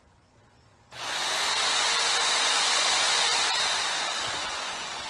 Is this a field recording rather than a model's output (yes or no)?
no